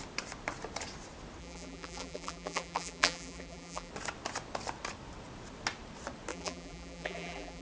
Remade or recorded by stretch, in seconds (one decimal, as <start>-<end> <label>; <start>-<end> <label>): 0.0-1.4 recorded; 1.4-3.9 remade; 3.9-6.3 recorded; 6.3-7.6 remade